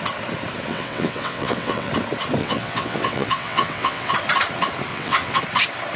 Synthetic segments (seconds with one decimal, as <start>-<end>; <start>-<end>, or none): 0.7-1.9; 2.4-4.1; 4.9-5.4